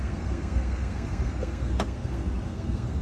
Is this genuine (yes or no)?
no